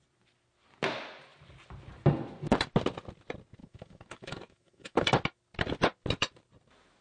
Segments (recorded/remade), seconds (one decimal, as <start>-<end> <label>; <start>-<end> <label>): 0.0-3.6 recorded; 3.6-5.0 remade; 5.0-7.0 recorded